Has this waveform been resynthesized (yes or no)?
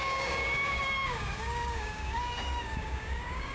yes